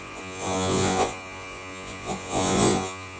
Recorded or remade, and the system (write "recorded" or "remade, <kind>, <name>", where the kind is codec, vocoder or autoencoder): remade, vocoder, Vocos